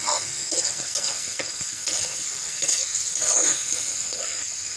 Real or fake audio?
fake